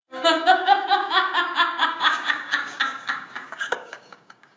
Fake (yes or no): yes